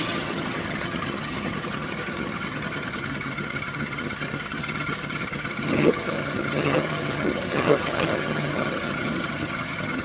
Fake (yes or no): yes